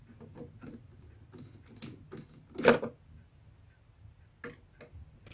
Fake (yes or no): no